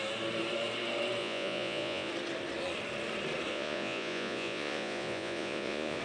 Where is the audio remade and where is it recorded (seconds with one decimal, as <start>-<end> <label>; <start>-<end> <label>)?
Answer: 0.0-1.2 recorded; 1.2-2.1 remade; 2.1-3.5 recorded; 3.5-6.0 remade